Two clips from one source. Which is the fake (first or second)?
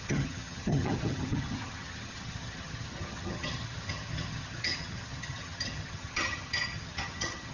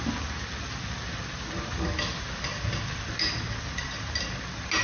first